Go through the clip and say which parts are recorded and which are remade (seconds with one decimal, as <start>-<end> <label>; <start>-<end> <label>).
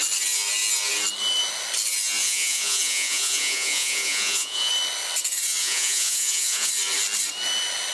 0.0-2.2 recorded; 2.2-4.7 remade; 4.7-5.6 recorded; 5.6-6.7 remade; 6.7-7.9 recorded